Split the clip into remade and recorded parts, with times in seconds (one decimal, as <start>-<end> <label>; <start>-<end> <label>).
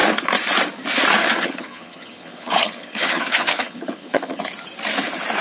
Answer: 0.0-1.2 recorded; 1.2-4.4 remade; 4.4-5.4 recorded